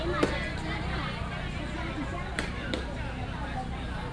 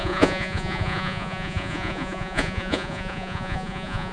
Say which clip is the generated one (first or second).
second